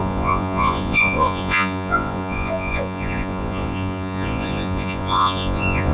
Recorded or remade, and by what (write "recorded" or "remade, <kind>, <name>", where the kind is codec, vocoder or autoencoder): remade, vocoder, Vocos